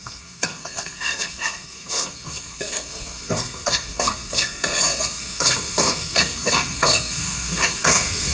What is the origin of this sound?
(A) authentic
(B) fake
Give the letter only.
B